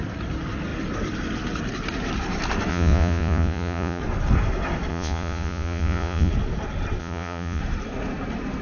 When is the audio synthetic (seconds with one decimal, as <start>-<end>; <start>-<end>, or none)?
2.7-4.0; 4.9-6.3; 7.0-7.6